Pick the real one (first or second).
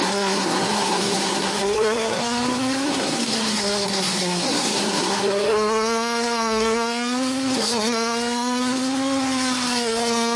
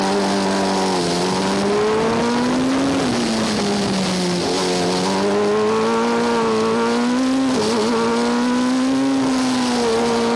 second